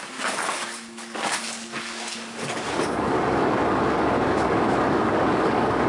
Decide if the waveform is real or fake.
fake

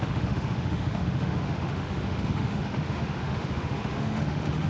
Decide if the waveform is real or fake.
fake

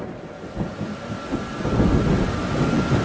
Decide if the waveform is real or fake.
real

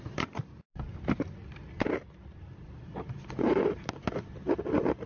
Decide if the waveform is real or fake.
real